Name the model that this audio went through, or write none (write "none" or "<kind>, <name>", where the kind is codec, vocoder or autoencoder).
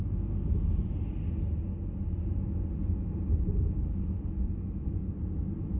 none